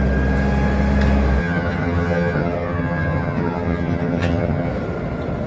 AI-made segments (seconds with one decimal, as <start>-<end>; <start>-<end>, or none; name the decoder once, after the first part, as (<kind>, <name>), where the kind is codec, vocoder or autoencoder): 1.4-4.7 (vocoder, HiFi-GAN)